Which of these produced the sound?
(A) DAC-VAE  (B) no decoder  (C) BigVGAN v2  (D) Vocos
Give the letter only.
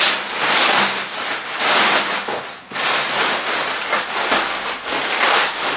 B